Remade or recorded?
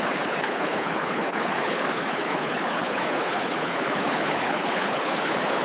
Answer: remade